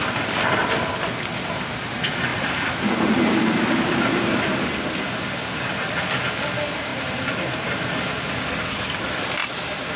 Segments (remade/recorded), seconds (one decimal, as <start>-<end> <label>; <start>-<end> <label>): 0.0-2.3 recorded; 2.3-4.4 remade; 4.4-6.9 recorded; 6.9-8.0 remade; 8.0-10.0 recorded